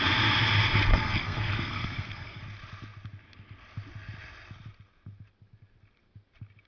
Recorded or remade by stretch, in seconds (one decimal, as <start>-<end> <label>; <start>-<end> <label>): 0.0-0.9 recorded; 0.9-2.4 remade; 2.4-6.7 recorded

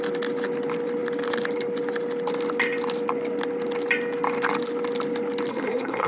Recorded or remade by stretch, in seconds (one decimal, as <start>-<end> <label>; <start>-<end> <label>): 0.0-5.5 recorded; 5.5-6.1 remade